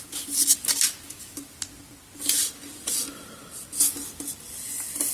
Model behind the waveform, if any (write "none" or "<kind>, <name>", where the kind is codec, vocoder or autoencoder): none